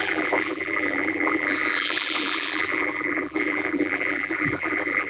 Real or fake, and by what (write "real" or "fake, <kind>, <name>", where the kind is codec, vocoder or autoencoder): fake, vocoder, BigVGAN v2